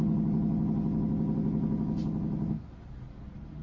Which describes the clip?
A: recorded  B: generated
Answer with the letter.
A